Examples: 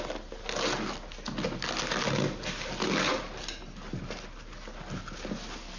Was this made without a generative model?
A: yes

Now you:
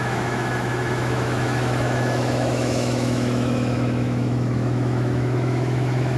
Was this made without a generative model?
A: no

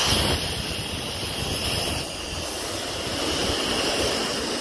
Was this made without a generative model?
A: yes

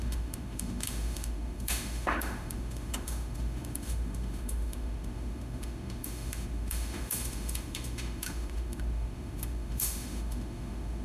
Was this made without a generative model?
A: no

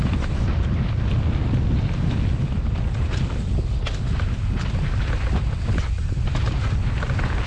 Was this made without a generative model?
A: yes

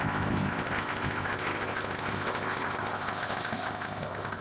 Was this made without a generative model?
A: no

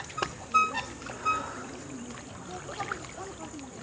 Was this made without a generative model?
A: yes